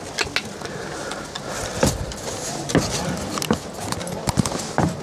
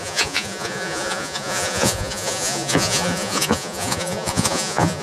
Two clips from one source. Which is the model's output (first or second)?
second